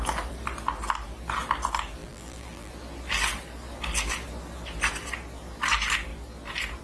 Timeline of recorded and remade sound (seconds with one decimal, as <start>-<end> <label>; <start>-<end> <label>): 0.0-2.0 recorded; 2.0-2.7 remade; 2.7-6.8 recorded